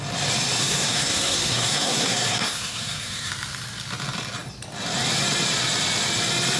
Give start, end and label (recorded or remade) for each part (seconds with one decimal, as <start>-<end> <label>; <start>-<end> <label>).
0.0-0.6 recorded; 0.6-3.3 remade; 3.3-6.6 recorded